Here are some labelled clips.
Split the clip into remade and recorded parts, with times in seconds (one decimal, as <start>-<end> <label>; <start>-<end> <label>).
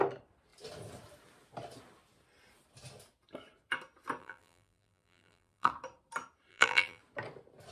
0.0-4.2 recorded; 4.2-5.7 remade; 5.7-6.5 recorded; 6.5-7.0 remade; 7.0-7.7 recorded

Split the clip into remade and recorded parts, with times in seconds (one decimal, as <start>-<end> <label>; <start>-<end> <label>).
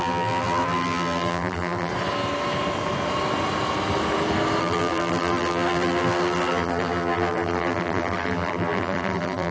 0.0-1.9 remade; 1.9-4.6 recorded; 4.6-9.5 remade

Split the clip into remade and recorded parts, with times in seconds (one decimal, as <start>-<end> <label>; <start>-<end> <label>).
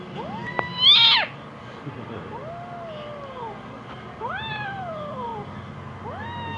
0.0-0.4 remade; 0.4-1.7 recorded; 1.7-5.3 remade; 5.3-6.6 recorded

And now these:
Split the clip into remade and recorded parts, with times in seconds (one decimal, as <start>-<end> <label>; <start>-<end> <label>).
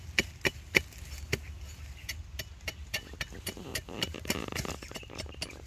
0.0-3.7 recorded; 3.7-5.1 remade; 5.1-5.7 recorded